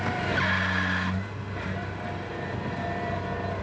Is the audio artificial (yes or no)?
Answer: no